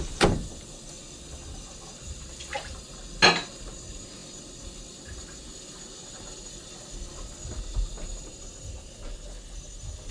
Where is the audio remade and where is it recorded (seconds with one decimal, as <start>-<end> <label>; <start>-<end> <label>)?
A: 0.0-10.1 recorded